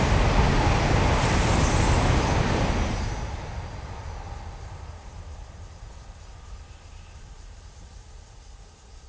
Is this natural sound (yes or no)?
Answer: yes